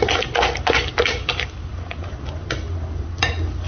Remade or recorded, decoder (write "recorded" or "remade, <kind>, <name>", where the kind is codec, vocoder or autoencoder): recorded